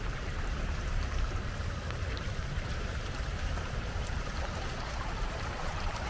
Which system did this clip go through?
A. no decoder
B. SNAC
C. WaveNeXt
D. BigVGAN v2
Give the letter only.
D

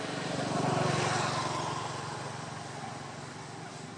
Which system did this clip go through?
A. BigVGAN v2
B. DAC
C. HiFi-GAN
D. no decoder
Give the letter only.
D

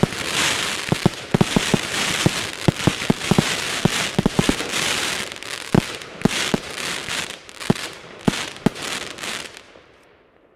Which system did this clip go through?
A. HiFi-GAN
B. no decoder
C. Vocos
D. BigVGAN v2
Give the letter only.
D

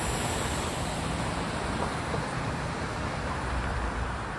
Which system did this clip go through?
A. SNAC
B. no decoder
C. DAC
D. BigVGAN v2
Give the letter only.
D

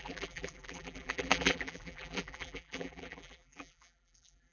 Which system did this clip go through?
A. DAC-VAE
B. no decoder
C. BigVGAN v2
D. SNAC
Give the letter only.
C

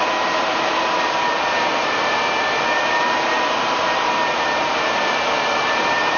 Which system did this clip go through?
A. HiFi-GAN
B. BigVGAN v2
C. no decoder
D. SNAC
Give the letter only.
B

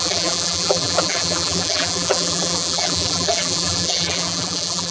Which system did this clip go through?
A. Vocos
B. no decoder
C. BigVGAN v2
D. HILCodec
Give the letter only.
C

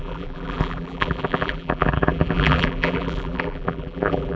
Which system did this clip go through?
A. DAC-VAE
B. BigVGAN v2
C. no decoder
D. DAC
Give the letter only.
B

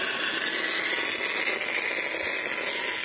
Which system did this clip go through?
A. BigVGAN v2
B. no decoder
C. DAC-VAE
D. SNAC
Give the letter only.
B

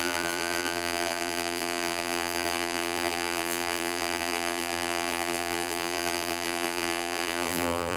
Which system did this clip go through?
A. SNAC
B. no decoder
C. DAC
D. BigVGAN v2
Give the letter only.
D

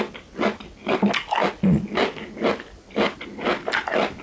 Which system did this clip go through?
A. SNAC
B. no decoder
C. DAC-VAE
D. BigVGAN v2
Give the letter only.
B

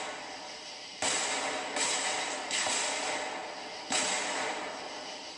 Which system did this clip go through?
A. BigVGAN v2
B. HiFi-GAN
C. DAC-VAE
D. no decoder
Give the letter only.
D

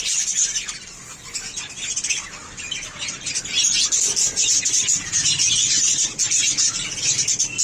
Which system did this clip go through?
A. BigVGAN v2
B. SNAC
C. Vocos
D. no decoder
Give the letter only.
D